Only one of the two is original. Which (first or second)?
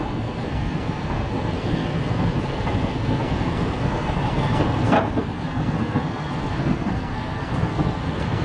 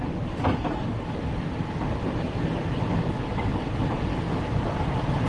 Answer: second